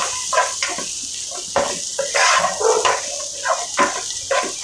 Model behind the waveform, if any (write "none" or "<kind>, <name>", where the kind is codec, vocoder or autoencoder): none